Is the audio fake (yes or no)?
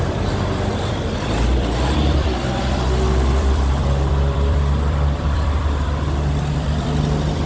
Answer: yes